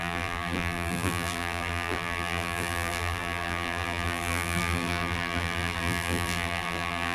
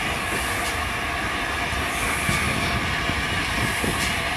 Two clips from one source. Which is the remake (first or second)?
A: first